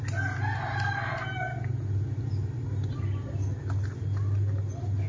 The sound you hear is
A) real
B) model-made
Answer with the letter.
A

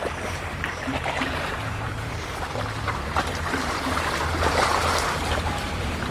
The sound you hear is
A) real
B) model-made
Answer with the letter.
B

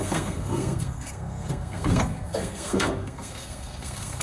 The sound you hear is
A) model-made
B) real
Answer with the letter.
A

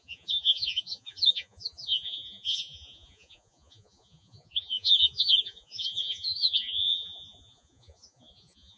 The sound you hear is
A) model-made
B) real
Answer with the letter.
A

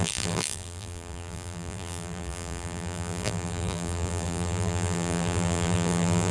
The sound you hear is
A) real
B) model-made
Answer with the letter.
B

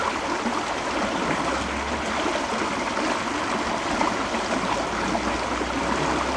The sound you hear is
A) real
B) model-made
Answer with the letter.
A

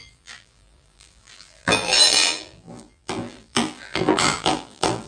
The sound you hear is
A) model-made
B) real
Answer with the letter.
A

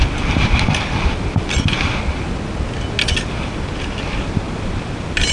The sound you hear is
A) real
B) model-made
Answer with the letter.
A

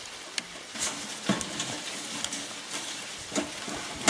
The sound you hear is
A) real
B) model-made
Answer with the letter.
A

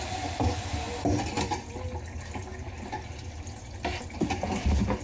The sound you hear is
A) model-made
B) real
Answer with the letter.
B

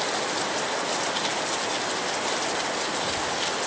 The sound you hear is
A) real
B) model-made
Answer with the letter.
A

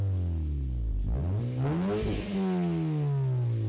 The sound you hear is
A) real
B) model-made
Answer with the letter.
A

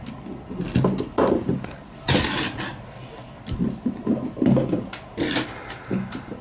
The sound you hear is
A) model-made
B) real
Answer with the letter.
B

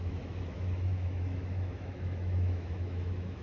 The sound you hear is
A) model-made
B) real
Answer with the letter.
A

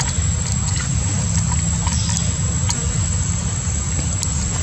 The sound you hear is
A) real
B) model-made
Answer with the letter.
A